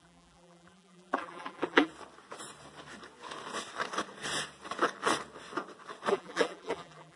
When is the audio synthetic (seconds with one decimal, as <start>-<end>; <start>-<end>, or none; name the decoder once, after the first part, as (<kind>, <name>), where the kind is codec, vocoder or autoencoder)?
0.0-1.9 (vocoder, BigVGAN v2); 6.1-7.2